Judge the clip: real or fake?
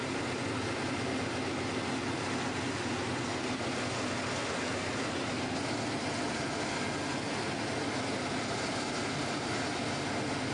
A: real